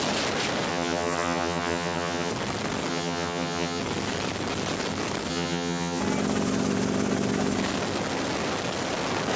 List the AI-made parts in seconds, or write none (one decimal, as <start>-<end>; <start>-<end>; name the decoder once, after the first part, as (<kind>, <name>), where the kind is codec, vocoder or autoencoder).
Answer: 0.7-2.3 (vocoder, HiFi-GAN); 2.9-3.8; 5.3-6.0